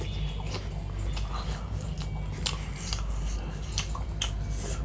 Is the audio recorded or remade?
recorded